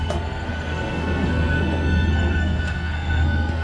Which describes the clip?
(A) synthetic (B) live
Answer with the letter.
A